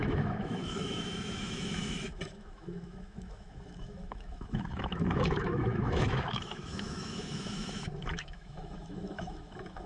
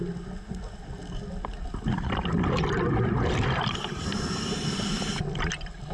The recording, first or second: second